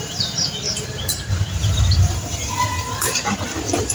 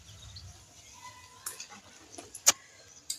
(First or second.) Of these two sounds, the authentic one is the second